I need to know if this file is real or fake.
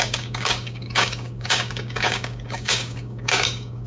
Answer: fake